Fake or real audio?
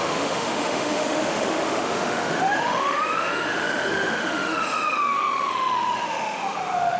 fake